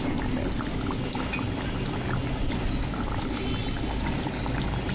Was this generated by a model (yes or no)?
no